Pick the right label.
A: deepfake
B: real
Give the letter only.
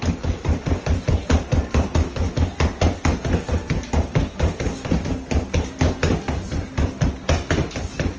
B